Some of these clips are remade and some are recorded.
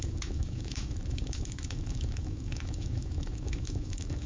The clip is remade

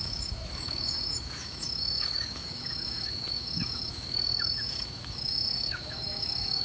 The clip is remade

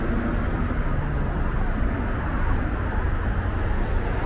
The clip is recorded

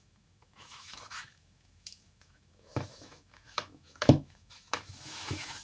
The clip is remade